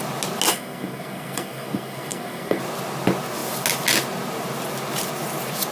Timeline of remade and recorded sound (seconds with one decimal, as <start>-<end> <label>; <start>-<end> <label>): 0.0-0.5 recorded; 0.5-2.6 remade; 2.6-5.7 recorded